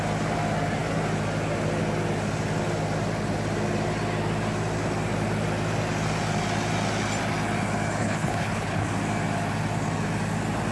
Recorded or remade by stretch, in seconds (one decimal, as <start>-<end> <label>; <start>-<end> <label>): 0.0-8.0 recorded; 8.0-8.9 remade; 8.9-10.7 recorded